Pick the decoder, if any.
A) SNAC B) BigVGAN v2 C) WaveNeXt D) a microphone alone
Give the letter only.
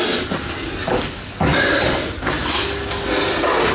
D